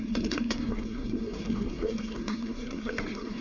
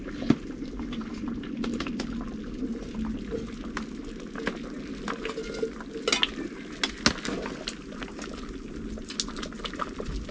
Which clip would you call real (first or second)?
second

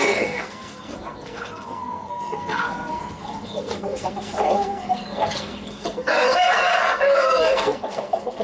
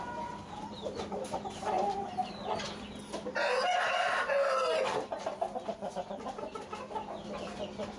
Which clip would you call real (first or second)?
second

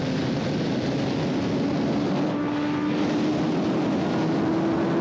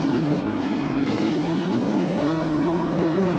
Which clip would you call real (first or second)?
first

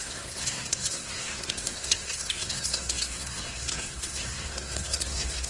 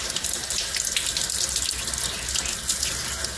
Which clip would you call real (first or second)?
second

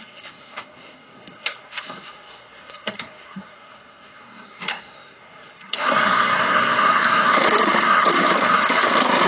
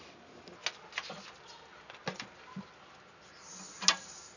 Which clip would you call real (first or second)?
second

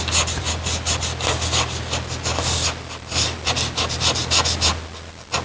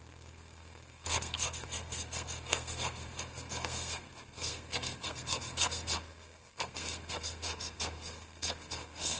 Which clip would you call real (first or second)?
first